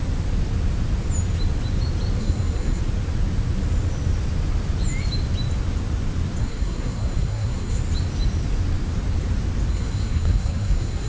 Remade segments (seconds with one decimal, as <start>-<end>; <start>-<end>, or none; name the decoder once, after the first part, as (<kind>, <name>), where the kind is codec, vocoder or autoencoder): 2.2-2.8 (codec, SNAC); 6.4-7.8; 9.7-11.1